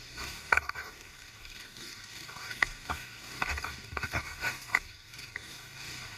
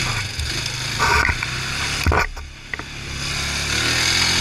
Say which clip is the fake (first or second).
first